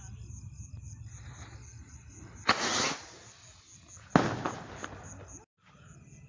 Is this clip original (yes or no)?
yes